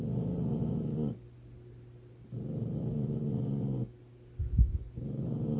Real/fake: real